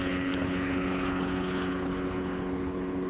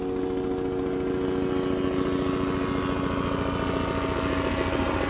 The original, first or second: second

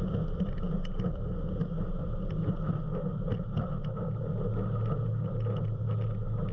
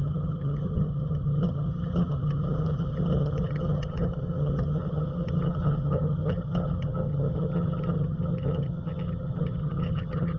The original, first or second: first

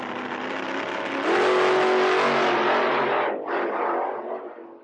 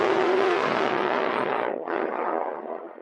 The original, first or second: first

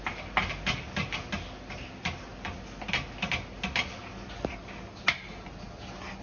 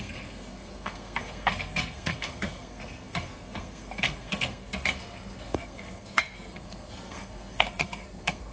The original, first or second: first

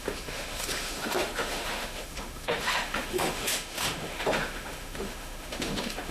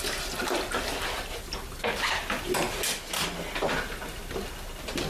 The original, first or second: second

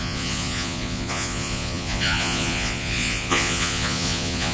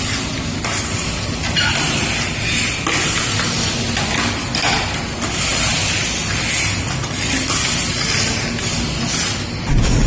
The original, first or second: second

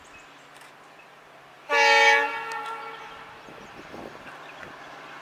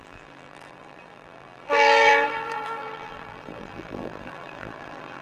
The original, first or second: first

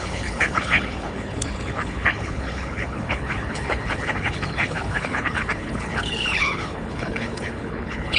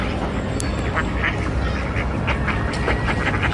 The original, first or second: second